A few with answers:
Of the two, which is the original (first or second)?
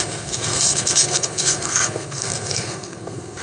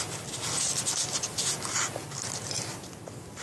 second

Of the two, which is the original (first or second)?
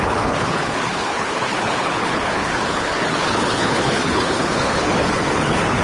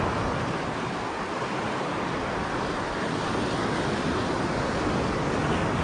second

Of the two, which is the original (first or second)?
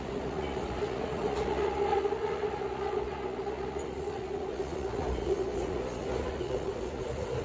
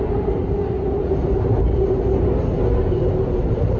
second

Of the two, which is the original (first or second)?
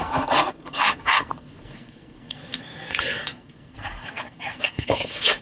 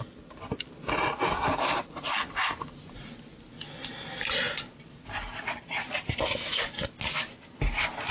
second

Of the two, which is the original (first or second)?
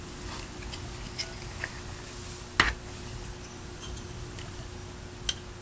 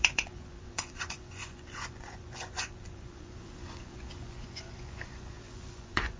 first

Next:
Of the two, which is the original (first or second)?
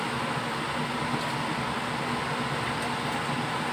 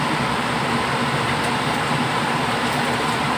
first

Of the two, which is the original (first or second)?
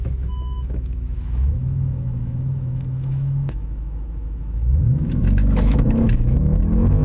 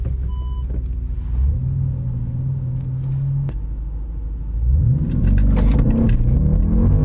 second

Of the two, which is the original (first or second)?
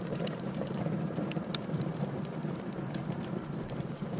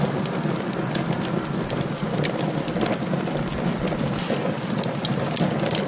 second